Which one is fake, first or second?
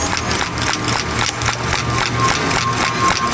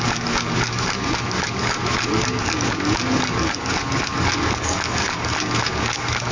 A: second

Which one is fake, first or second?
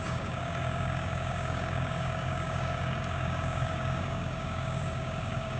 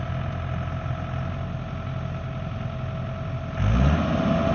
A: first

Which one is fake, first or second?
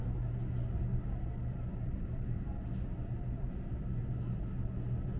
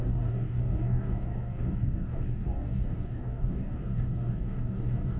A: second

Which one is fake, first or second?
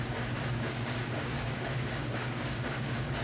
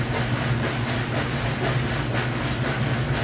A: first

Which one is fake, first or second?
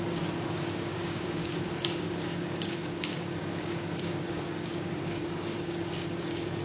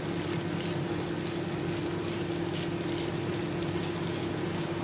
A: first